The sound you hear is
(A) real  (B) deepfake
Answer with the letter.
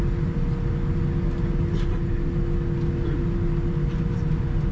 A